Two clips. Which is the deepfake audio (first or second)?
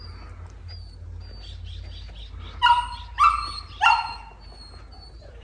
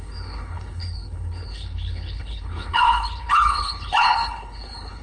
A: second